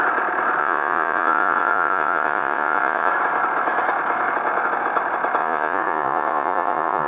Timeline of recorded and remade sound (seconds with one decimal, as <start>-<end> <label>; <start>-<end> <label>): 0.0-0.6 recorded; 0.6-3.1 remade; 3.1-5.4 recorded; 5.4-7.1 remade